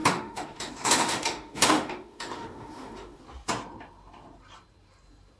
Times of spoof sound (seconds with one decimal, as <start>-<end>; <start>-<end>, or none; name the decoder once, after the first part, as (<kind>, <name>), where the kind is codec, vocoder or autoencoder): 0.0-3.2 (autoencoder, DAC-VAE)